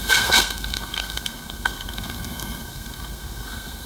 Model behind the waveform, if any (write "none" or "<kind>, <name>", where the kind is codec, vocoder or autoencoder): codec, SNAC